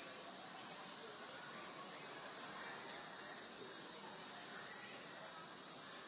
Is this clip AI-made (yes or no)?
no